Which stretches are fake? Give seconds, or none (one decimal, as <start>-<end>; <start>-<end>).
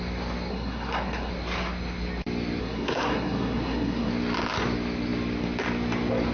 0.5-1.3; 2.6-4.1